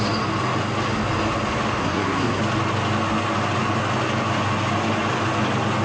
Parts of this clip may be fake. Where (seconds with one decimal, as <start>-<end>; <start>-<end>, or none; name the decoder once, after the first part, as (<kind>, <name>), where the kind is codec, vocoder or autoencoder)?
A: 1.8-2.4 (codec, SNAC)